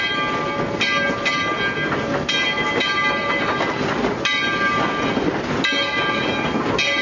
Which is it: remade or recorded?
recorded